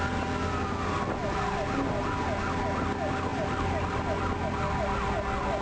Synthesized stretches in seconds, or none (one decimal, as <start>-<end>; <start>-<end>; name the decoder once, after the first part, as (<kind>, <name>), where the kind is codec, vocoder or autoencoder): 3.3-4.0 (vocoder, BigVGAN v2)